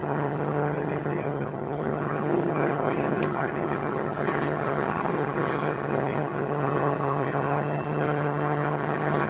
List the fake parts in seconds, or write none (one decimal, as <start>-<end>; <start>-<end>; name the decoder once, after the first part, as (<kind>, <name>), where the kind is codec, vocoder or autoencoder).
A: 0.0-9.3 (vocoder, HiFi-GAN)